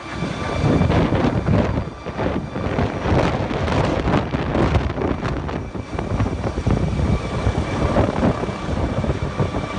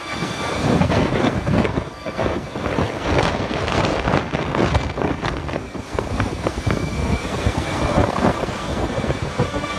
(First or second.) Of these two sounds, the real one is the first